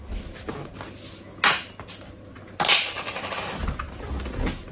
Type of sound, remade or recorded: recorded